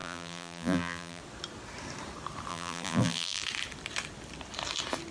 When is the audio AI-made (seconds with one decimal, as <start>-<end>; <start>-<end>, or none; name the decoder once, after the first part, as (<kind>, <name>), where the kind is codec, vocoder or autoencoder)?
0.0-1.2 (vocoder, BigVGAN v2); 2.5-3.4